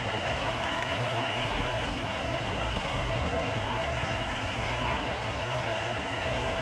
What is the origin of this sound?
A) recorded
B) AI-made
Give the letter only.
B